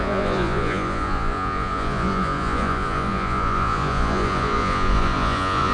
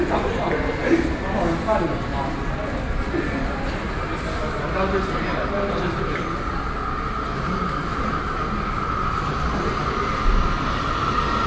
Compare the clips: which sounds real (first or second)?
second